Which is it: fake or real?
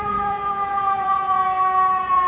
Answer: fake